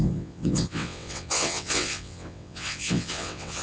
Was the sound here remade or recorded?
remade